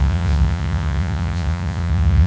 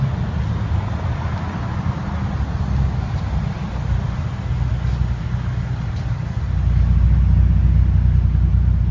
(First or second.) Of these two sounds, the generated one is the first